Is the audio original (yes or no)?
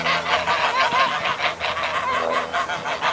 yes